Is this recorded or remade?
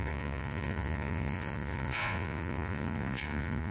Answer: remade